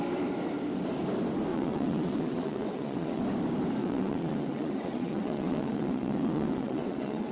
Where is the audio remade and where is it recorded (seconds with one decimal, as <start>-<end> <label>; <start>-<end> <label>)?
0.0-1.5 recorded; 1.5-3.2 remade; 3.2-3.8 recorded; 3.8-7.3 remade